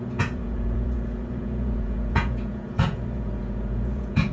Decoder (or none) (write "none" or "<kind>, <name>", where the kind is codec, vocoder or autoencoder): vocoder, Vocos